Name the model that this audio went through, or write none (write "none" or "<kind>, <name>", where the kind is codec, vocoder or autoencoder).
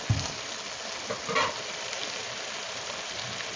none